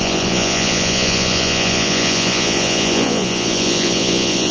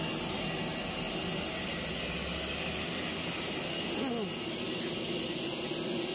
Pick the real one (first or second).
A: second